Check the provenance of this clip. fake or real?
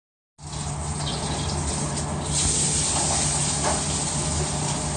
real